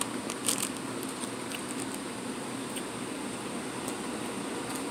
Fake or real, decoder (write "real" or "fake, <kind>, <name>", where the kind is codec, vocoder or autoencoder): real